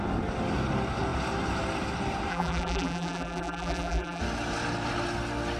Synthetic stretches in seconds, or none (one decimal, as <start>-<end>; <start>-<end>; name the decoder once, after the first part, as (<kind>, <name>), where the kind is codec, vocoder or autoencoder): 2.3-4.2 (vocoder, BigVGAN v2)